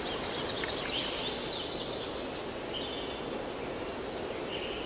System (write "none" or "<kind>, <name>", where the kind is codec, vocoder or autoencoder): none